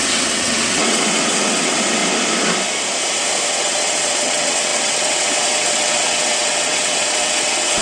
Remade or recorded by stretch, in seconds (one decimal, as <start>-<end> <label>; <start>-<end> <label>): 0.0-2.0 remade; 2.0-3.5 recorded; 3.5-7.8 remade